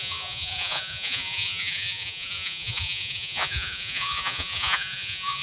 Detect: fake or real fake